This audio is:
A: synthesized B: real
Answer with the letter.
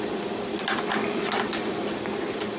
B